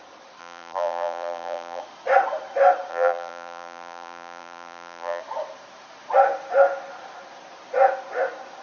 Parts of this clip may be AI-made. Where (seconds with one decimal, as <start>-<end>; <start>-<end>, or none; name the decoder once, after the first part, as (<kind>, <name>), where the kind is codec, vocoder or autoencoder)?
0.4-1.8 (vocoder, BigVGAN v2); 2.9-5.2